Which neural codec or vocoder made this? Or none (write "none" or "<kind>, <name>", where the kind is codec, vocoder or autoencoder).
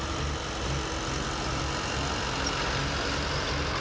none